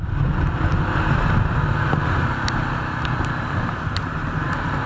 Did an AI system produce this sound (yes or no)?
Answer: no